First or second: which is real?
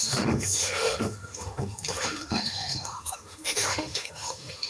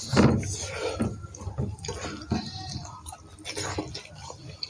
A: second